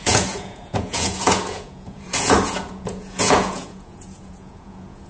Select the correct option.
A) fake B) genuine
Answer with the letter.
A